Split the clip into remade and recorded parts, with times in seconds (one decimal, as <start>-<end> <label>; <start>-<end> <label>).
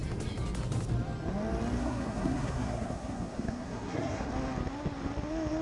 0.0-1.8 recorded; 1.8-4.3 remade; 4.3-5.6 recorded